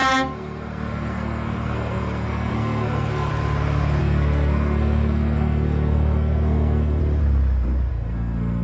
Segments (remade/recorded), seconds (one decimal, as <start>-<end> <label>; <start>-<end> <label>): 0.0-3.3 remade; 3.3-4.0 recorded; 4.0-7.0 remade; 7.0-7.9 recorded; 7.9-8.6 remade